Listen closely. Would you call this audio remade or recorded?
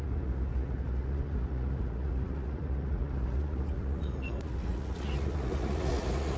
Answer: remade